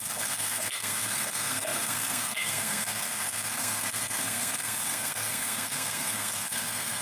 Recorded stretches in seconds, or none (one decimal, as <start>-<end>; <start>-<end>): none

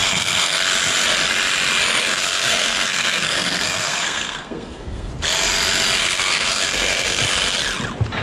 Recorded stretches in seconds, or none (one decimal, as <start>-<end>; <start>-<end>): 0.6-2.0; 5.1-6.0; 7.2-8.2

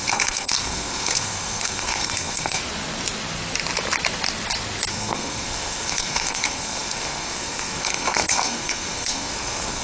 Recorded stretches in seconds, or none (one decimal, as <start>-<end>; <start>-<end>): 2.6-4.9

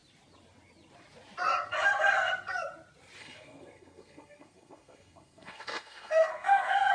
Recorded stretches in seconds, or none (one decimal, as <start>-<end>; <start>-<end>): 0.0-3.2

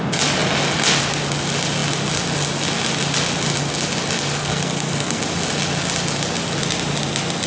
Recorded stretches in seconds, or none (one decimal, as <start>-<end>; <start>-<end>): 0.0-4.4; 5.2-7.5

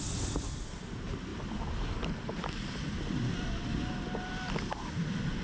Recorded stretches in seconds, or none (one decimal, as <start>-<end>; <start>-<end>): 0.0-5.4

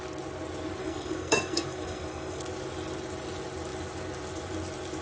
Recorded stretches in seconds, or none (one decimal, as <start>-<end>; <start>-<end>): 0.0-0.8; 2.4-5.0